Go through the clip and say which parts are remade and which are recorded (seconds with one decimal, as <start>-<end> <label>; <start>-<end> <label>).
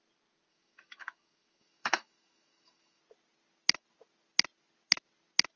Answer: 0.0-0.5 recorded; 0.5-3.0 remade; 3.0-5.6 recorded